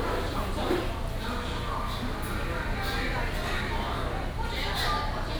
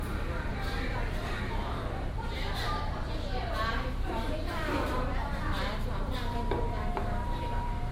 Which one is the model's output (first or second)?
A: second